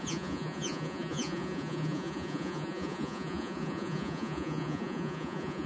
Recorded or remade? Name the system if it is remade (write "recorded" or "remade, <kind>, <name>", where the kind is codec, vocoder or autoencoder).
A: remade, vocoder, Vocos